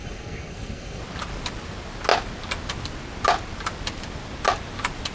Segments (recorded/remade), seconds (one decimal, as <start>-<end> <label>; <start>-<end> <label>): 0.0-1.0 remade; 1.0-5.1 recorded